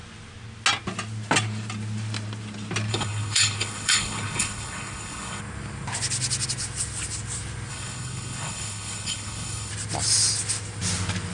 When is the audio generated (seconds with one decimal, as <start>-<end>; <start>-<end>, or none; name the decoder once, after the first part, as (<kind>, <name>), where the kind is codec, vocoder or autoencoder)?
2.9-5.4 (codec, HILCodec); 7.7-9.7